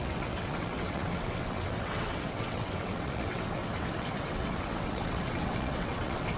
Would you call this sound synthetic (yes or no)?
yes